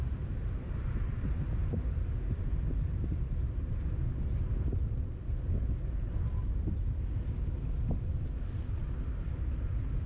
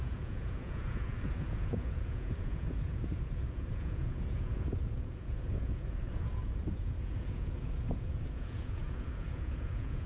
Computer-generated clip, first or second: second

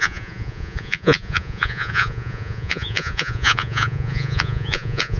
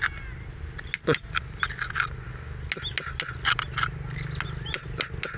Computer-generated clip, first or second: first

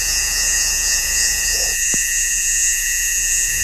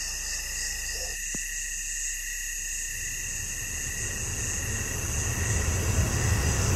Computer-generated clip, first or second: first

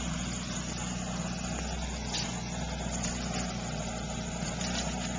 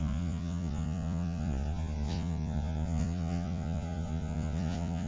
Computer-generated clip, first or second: second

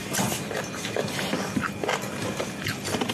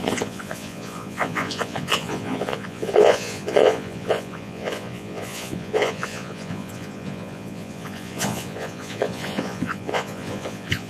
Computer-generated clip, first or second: second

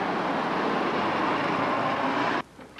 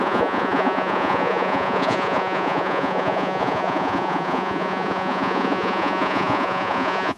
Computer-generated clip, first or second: second